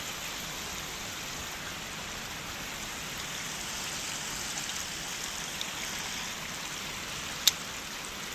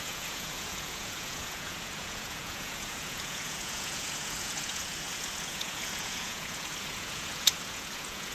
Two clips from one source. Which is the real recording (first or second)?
first